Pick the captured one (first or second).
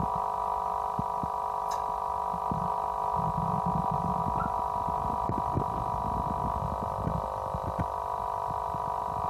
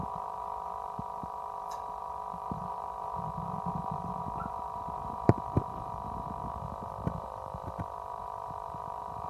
first